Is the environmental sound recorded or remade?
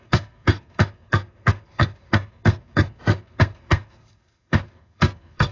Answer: remade